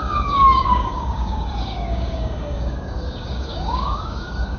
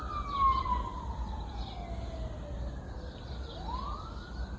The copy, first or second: first